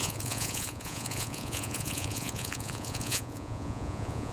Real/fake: fake